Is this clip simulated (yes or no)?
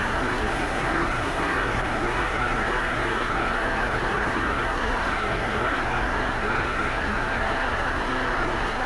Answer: yes